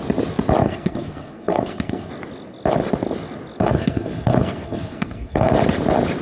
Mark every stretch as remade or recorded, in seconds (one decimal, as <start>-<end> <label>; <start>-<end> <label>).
0.0-0.6 recorded; 0.6-2.1 remade; 2.1-3.6 recorded; 3.6-5.5 remade; 5.5-6.2 recorded